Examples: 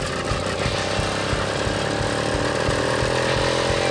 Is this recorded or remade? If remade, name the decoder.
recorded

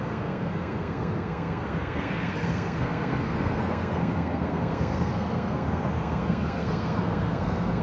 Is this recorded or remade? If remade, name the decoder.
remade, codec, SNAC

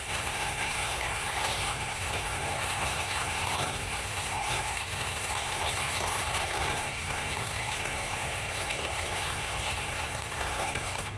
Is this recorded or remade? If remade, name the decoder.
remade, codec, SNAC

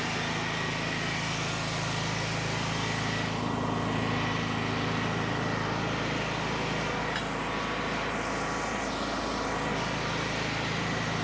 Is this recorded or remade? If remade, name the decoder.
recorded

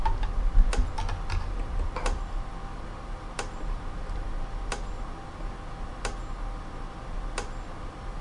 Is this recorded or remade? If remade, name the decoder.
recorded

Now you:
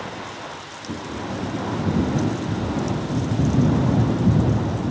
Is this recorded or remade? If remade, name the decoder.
recorded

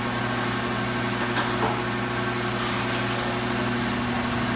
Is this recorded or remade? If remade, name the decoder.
recorded